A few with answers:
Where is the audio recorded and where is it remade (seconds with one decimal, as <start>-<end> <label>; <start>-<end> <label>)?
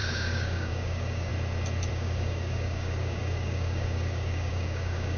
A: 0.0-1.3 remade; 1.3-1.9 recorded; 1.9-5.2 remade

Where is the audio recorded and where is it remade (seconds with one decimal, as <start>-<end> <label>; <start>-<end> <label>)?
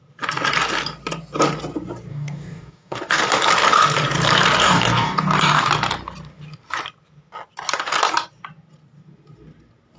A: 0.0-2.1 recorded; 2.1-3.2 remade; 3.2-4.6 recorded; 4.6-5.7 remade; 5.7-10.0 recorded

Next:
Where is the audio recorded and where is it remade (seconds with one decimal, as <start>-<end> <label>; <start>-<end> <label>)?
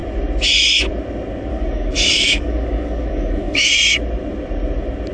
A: 0.0-1.5 recorded; 1.5-3.7 remade; 3.7-5.1 recorded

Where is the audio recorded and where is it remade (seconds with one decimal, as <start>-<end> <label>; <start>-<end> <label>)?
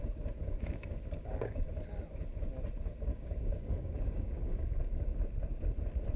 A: 0.0-0.4 recorded; 0.4-1.7 remade; 1.7-3.1 recorded; 3.1-5.0 remade; 5.0-6.2 recorded